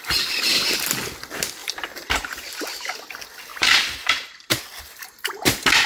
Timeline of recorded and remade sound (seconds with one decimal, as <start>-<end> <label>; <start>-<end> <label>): 0.0-1.6 recorded; 1.6-2.6 remade; 2.6-3.5 recorded; 3.5-4.6 remade; 4.6-5.9 recorded